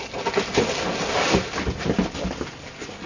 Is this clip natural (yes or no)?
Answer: yes